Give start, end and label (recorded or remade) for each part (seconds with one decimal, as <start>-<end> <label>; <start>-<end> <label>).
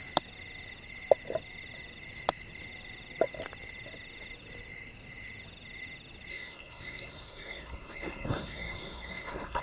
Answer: 0.0-6.3 recorded; 6.3-9.6 remade